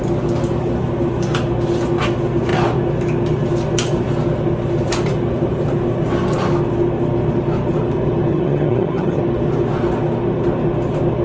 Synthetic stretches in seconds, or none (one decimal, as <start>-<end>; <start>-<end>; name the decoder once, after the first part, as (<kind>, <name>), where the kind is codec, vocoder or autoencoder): 8.3-9.2 (vocoder, HiFi-GAN)